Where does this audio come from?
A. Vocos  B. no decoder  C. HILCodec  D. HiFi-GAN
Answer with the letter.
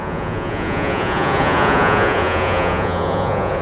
A